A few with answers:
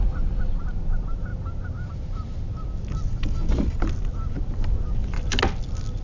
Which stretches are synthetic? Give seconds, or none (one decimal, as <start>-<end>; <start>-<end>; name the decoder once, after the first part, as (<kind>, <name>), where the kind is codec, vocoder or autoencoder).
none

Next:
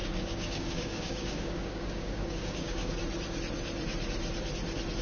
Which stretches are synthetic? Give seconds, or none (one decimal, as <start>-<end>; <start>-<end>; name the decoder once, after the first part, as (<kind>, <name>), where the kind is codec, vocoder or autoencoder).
0.0-2.9 (codec, DAC)

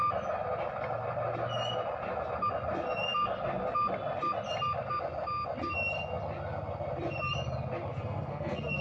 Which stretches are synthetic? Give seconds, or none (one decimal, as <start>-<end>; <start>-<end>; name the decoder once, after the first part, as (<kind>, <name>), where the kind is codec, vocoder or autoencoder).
7.9-8.8 (codec, SNAC)

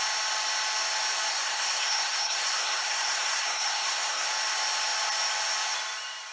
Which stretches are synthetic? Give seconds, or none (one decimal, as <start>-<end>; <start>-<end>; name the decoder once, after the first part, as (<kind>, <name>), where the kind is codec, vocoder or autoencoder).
1.3-4.3 (codec, SNAC)

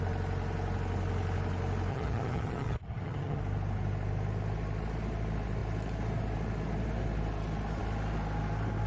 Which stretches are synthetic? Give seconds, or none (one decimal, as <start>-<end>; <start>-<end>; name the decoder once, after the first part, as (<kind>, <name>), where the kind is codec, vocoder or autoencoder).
1.9-3.4 (vocoder, HiFi-GAN)

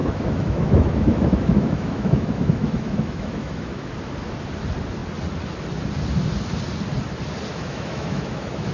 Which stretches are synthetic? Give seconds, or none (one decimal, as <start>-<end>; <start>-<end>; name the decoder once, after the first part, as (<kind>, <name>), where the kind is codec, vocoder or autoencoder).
0.0-3.9 (autoencoder, DAC-VAE); 7.5-8.7

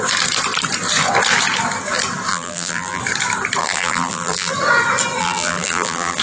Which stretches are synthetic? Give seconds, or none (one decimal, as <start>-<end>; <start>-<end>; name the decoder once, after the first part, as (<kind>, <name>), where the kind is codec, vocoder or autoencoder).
2.3-3.0 (vocoder, BigVGAN v2); 3.6-4.5; 5.2-6.2